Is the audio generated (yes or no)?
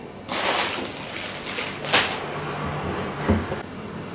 no